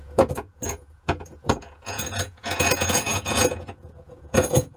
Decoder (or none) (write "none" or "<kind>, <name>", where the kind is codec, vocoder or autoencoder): vocoder, Vocos